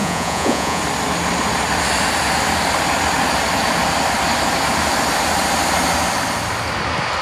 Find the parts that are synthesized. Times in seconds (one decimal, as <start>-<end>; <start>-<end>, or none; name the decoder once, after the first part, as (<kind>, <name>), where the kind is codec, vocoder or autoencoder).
0.0-0.8 (vocoder, Vocos)